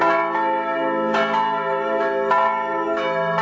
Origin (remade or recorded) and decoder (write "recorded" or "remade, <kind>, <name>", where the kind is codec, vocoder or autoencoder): recorded